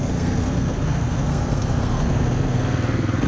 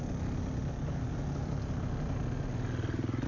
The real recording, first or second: second